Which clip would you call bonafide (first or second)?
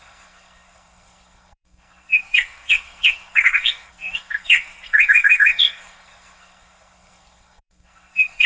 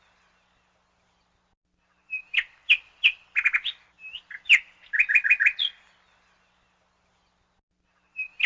second